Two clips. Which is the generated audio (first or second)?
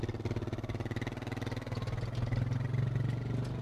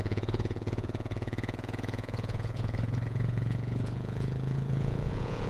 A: second